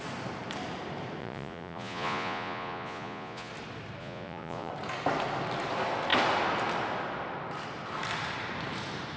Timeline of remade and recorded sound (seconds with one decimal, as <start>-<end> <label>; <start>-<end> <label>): 0.0-1.2 recorded; 1.2-3.5 remade; 3.5-4.0 recorded; 4.0-4.7 remade; 4.7-9.2 recorded